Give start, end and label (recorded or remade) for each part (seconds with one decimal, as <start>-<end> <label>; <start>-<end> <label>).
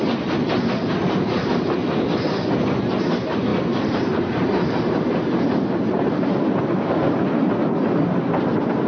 0.0-3.5 recorded; 3.5-7.2 remade; 7.2-8.9 recorded